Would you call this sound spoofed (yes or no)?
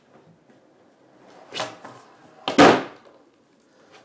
no